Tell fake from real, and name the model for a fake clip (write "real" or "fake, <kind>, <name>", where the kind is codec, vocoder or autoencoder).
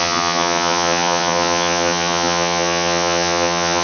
fake, vocoder, HiFi-GAN